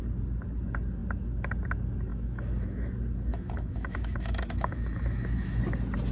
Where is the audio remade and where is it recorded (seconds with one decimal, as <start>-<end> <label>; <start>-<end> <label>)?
0.0-2.1 recorded; 2.1-2.9 remade; 2.9-3.3 recorded; 3.3-5.6 remade; 5.6-6.1 recorded